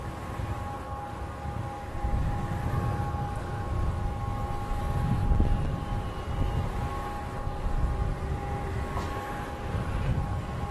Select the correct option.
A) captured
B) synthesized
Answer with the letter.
A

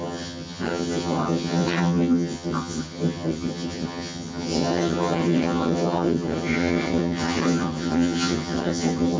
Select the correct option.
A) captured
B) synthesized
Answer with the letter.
B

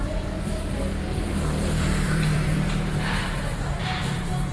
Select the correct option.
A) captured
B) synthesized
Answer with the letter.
B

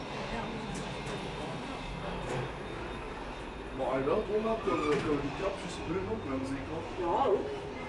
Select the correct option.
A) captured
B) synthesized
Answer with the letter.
A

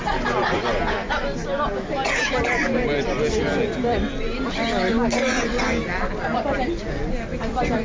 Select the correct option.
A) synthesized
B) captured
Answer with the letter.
B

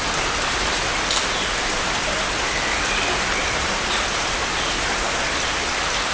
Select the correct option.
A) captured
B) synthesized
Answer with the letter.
A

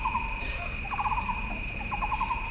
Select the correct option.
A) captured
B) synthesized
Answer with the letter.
A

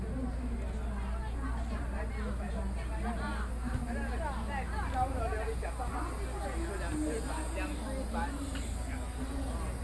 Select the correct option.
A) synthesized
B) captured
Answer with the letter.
B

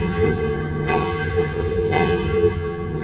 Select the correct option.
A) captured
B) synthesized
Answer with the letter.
B